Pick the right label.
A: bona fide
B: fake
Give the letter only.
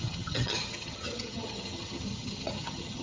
B